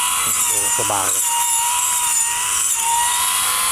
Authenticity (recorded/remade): remade